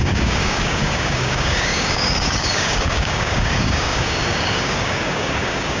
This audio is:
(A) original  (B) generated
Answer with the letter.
B